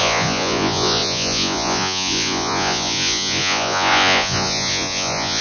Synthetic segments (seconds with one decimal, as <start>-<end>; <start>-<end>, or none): 0.0-5.4